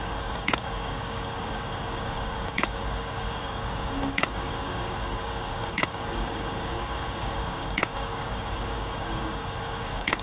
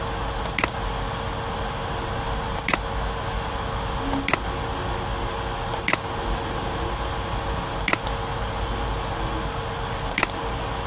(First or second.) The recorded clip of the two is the second